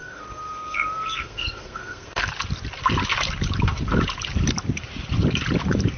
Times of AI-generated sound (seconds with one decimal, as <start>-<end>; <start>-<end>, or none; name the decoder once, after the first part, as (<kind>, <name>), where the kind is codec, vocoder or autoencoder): 0.0-2.3 (codec, SNAC)

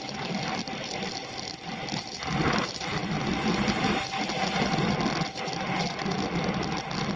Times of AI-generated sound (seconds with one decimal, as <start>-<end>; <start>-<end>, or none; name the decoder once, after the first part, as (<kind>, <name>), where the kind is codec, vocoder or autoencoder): none

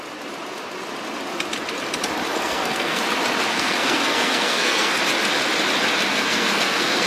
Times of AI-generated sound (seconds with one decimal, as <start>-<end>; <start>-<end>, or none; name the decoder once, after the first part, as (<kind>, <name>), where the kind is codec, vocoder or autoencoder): 2.3-3.0 (codec, SNAC); 3.5-5.0; 6.1-7.1

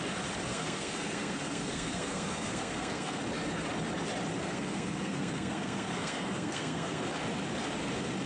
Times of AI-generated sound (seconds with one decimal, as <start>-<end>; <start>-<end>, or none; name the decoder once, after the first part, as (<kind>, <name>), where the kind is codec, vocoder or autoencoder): 0.5-3.2 (codec, SNAC); 4.3-7.0

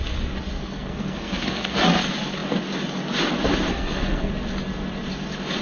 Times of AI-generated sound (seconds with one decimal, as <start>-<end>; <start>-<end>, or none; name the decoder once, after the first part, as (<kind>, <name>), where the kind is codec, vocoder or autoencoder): 0.6-1.8 (codec, SNAC); 3.7-4.3

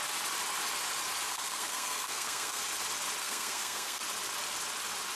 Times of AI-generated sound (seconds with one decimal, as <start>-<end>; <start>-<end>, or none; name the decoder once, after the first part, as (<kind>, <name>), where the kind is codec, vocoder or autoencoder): 1.3-2.6 (codec, SNAC); 3.2-4.0

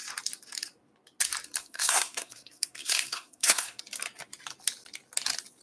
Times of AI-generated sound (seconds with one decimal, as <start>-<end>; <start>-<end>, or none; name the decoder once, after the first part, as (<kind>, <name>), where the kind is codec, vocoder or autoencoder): 1.6-3.8 (codec, SNAC)

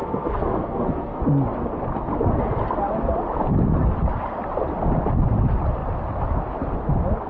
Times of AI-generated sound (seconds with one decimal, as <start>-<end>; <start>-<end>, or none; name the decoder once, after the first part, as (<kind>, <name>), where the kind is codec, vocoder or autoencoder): 0.0-1.2 (codec, SNAC)